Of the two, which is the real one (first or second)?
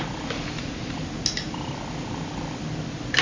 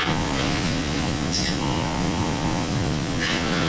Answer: first